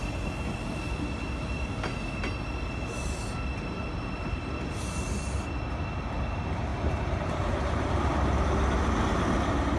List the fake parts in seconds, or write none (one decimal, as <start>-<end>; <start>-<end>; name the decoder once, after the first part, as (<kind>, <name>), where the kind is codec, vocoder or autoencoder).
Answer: 6.7-7.9 (vocoder, BigVGAN v2)